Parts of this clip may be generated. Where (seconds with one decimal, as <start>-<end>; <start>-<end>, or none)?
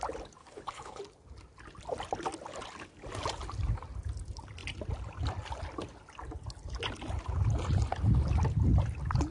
0.4-1.0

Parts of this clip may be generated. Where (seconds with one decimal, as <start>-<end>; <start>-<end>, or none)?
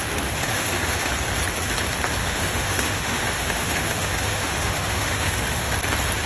0.0-1.1; 2.2-5.7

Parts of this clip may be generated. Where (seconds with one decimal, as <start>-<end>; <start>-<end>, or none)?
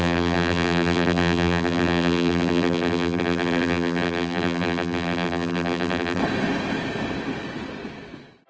0.0-6.2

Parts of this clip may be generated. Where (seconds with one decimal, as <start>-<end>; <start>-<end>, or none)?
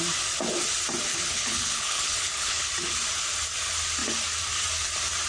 1.1-2.7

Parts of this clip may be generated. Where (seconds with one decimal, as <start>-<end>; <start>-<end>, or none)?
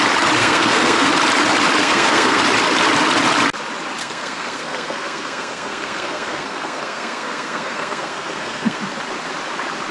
0.4-1.1; 1.8-2.4; 4.0-8.8